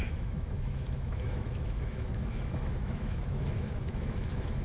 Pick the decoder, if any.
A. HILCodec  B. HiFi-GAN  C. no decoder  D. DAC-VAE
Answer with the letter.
D